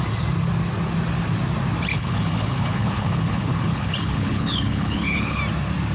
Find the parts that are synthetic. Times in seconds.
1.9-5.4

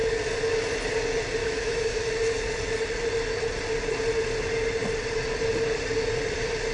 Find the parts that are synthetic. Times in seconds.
1.4-2.0